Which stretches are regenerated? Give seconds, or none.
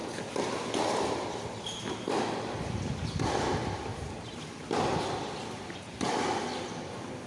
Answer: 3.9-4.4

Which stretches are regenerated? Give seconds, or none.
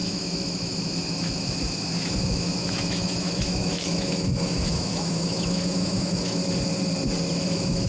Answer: 0.0-6.4; 7.4-7.9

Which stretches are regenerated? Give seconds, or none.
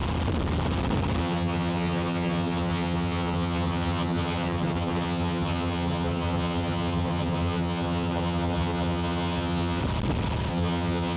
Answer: 1.2-9.8; 10.5-11.2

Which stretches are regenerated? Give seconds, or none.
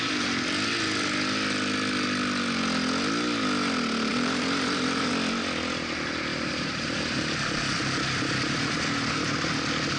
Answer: 4.1-5.1; 6.3-7.2